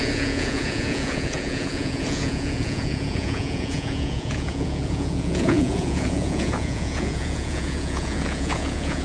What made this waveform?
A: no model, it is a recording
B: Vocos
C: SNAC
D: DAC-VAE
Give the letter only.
B